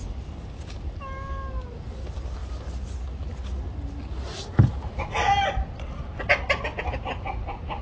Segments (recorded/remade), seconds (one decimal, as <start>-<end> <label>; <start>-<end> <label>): 0.0-7.8 recorded